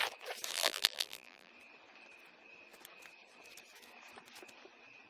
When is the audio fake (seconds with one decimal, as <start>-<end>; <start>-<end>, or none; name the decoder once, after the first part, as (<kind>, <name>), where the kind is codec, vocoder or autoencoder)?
0.5-1.5 (vocoder, BigVGAN v2)